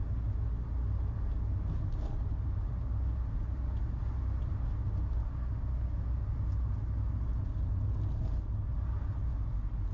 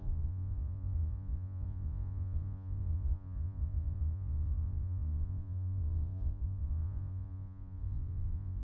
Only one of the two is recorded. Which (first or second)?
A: first